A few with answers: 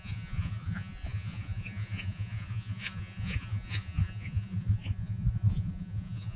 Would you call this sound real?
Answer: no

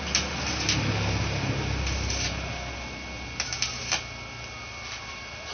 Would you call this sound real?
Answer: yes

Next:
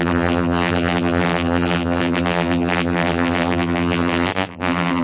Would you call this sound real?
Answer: no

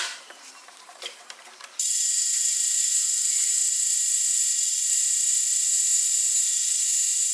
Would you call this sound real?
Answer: no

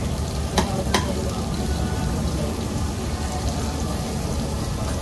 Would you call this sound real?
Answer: no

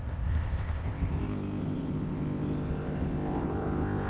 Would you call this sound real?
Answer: no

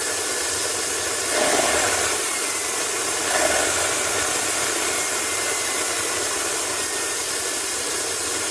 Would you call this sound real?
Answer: yes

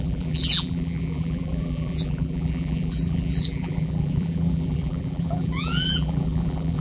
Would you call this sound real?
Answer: no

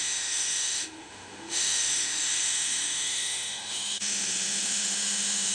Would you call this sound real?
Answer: no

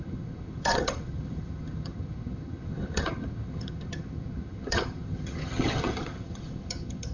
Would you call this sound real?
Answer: no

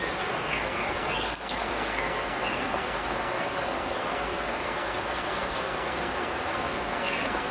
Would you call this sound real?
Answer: no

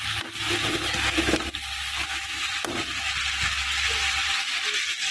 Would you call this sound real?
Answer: yes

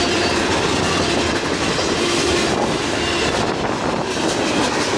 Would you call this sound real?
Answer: yes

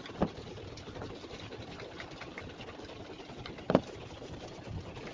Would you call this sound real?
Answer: yes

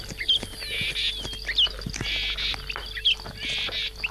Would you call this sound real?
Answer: yes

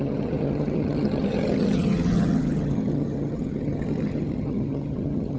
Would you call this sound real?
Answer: no